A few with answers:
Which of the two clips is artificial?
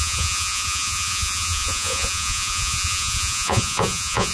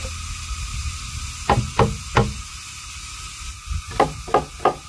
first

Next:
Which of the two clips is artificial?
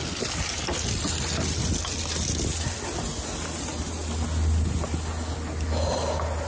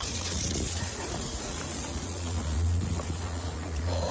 second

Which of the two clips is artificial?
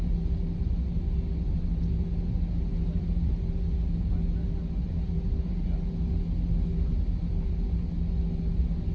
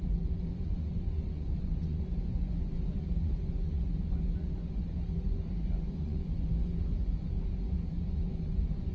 second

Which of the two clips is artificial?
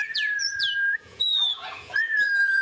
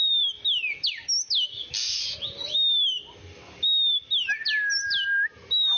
first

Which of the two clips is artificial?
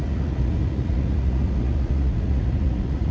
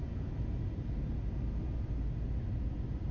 first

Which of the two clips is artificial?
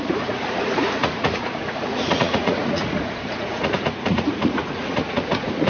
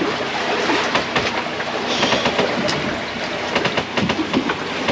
first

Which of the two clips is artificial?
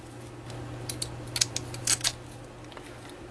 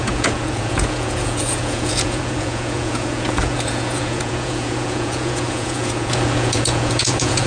second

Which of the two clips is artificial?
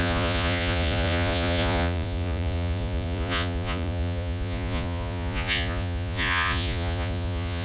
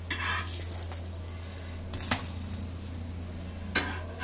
first